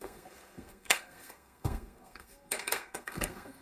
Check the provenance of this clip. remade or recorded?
remade